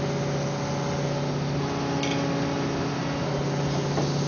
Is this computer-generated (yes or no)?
no